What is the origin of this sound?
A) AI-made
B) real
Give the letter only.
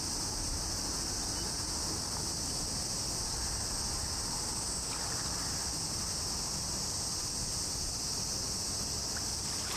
B